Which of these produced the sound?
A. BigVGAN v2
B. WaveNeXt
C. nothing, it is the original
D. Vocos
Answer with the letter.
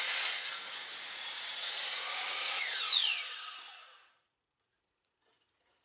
D